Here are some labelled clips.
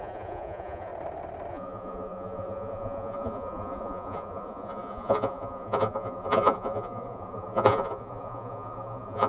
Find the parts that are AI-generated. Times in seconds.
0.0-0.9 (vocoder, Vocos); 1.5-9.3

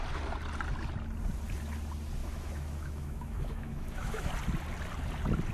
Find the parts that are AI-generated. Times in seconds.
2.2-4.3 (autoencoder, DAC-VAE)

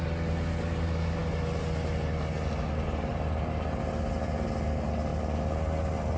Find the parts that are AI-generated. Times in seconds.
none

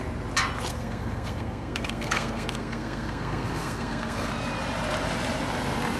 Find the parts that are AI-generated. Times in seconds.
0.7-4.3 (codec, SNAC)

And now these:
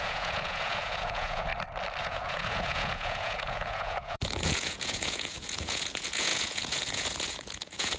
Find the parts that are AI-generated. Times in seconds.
0.0-1.5 (vocoder, Vocos); 2.0-8.0